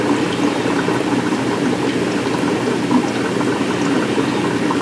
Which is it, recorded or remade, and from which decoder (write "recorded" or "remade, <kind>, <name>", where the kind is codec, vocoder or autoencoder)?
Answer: recorded